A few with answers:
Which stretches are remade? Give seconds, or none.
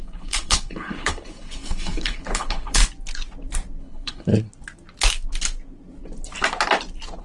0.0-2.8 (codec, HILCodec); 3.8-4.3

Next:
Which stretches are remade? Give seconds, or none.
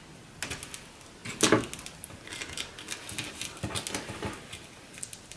none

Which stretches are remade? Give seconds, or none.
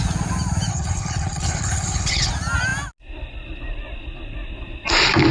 0.7-2.3 (codec, HILCodec)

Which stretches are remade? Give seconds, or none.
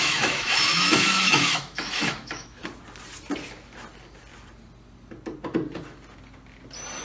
0.0-2.6 (autoencoder, DAC-VAE)